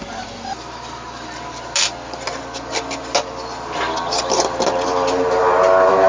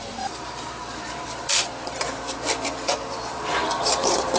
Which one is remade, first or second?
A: second